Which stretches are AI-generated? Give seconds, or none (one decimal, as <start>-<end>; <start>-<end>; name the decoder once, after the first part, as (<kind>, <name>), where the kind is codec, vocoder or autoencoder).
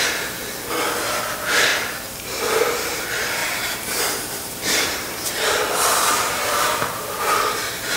1.7-2.4 (vocoder, BigVGAN v2); 3.4-7.3